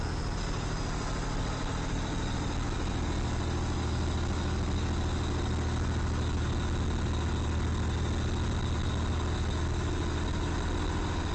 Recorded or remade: recorded